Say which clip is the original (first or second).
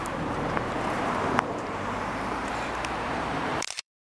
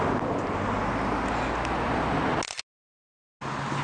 second